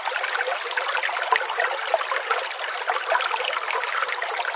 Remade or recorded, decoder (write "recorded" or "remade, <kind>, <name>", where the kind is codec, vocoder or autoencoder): recorded